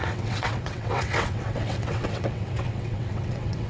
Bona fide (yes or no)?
no